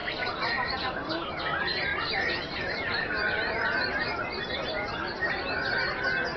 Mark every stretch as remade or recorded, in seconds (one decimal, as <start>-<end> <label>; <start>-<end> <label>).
0.0-1.3 remade; 1.3-1.9 recorded; 1.9-4.5 remade; 4.5-6.4 recorded